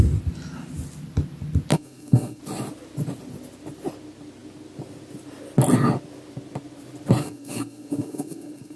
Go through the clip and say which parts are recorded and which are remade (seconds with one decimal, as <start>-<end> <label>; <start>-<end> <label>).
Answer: 0.0-1.7 recorded; 1.7-2.4 remade; 2.4-7.2 recorded; 7.2-8.8 remade

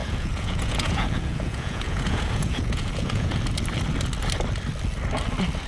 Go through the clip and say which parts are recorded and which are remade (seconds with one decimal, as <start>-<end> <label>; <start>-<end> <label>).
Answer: 0.0-3.4 remade; 3.4-5.7 recorded

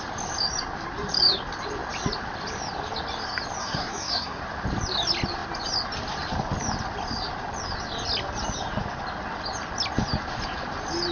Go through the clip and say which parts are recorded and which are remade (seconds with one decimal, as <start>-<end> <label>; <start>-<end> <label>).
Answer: 0.0-3.6 recorded; 3.6-4.4 remade; 4.4-11.1 recorded

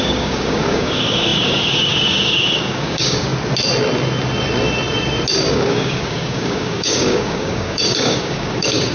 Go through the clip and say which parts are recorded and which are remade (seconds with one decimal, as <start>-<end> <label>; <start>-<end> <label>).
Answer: 0.0-3.3 remade; 3.3-5.5 recorded; 5.5-8.9 remade